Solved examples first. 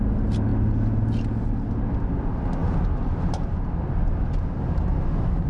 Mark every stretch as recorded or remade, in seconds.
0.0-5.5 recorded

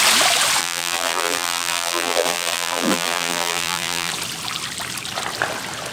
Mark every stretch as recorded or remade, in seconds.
0.0-0.6 recorded; 0.6-4.1 remade; 4.1-5.9 recorded

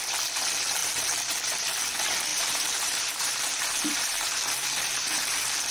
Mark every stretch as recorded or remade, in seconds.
0.0-0.8 recorded; 0.8-1.3 remade; 1.3-2.3 recorded; 2.3-5.7 remade